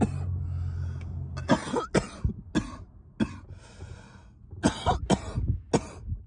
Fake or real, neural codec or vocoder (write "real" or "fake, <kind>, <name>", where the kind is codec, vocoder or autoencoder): real